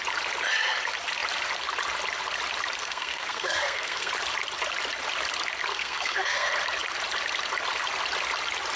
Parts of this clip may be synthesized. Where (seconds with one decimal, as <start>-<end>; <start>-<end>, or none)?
2.8-4.1; 5.7-6.5